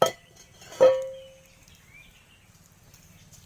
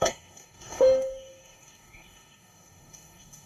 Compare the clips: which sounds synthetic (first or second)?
second